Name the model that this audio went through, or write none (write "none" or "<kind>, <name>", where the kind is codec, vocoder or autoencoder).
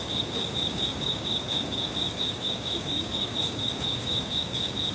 codec, DAC